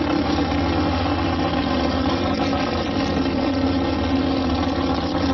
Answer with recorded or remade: recorded